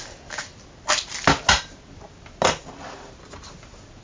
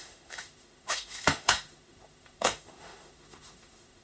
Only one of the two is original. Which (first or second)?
first